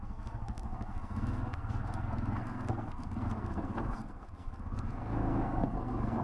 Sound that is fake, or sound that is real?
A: fake